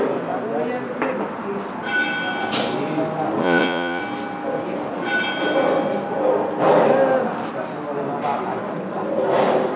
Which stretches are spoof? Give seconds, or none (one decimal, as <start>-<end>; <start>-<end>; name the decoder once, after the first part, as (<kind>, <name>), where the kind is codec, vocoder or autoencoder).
3.4-4.0 (vocoder, Vocos)